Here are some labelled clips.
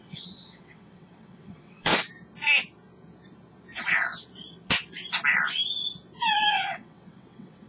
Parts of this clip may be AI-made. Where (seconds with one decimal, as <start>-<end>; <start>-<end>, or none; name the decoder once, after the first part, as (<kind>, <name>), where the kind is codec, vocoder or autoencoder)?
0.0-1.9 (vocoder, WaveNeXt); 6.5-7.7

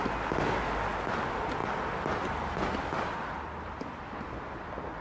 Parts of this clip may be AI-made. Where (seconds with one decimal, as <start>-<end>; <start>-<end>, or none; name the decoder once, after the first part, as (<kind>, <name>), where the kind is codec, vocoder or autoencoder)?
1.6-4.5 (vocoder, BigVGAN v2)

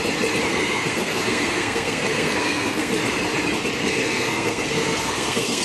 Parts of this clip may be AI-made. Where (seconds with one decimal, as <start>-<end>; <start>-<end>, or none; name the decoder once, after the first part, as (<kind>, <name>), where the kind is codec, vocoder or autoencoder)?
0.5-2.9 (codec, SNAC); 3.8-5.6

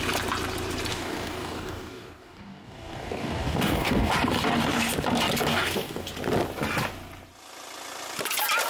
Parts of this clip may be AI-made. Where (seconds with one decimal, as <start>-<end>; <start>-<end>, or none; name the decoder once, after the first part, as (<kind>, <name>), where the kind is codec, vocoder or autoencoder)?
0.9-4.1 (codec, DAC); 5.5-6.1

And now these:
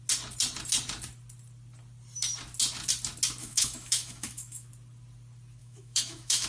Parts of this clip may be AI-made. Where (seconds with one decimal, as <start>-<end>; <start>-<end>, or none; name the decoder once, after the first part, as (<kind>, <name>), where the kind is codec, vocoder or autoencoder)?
3.4-4.7 (autoencoder, DAC-VAE); 5.6-6.5

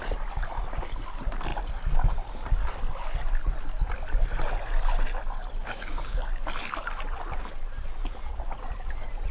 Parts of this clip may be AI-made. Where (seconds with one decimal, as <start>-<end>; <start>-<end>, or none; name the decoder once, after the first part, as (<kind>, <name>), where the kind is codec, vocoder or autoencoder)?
5.6-6.3 (codec, DAC)

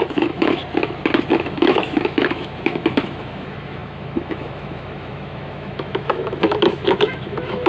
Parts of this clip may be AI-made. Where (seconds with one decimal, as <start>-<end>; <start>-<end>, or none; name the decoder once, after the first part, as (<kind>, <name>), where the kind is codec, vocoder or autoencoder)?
0.0-0.6 (autoencoder, DAC-VAE); 1.3-7.7